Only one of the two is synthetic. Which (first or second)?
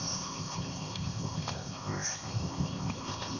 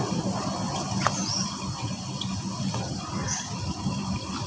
first